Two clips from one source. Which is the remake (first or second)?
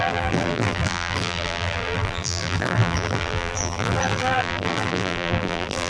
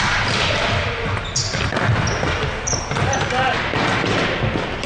first